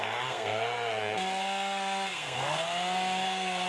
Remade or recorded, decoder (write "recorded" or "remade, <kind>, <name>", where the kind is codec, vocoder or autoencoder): remade, codec, SNAC